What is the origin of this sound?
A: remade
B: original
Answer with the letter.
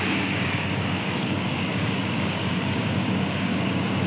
A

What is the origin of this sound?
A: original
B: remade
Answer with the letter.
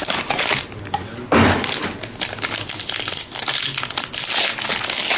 A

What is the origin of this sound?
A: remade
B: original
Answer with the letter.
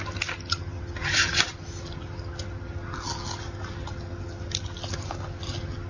B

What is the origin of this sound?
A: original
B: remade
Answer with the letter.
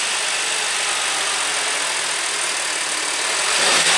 A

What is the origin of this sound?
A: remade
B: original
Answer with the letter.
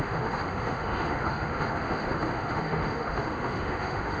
A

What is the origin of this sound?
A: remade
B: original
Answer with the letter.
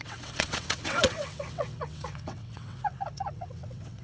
A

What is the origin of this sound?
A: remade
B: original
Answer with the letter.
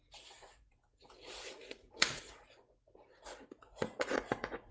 A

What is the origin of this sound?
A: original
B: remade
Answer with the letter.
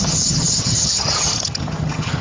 B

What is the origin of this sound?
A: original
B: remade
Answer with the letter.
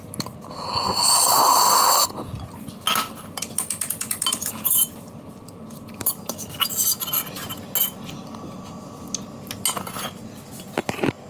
A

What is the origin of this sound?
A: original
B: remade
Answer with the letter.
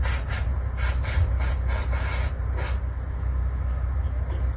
A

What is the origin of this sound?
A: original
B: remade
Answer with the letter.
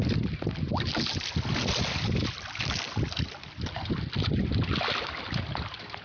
A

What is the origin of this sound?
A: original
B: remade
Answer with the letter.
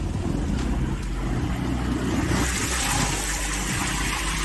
A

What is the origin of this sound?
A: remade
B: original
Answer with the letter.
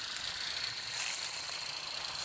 B